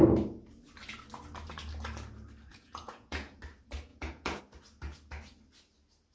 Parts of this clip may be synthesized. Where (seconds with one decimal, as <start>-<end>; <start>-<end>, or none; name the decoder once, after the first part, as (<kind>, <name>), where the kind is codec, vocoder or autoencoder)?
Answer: 2.5-3.4 (vocoder, Vocos); 3.9-4.4